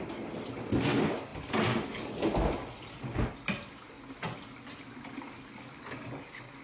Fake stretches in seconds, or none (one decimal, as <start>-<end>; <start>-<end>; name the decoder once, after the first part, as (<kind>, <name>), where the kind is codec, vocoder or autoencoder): none